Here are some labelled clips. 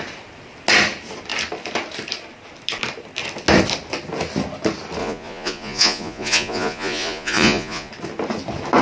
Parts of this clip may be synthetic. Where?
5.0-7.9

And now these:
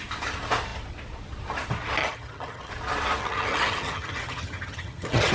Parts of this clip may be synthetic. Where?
2.0-2.7; 3.2-5.3

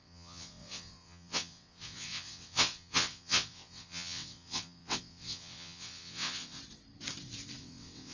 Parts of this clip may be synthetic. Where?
0.0-6.6; 7.6-8.1

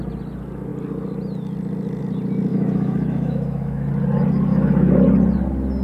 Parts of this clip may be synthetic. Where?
2.5-3.9; 4.5-5.0

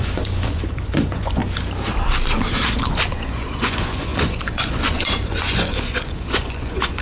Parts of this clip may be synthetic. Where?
0.0-1.4; 3.1-7.0

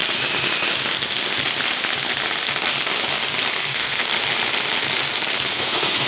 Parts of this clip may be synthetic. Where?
3.5-4.0; 5.5-6.1